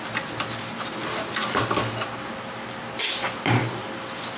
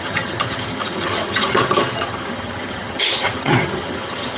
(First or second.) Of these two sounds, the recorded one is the first